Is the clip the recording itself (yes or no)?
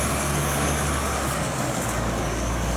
no